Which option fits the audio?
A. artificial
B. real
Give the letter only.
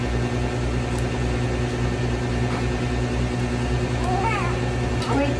B